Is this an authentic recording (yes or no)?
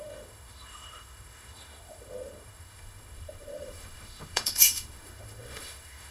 no